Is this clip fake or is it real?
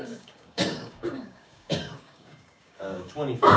fake